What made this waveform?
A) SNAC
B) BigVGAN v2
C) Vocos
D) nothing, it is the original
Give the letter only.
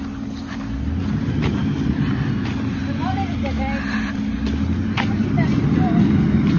D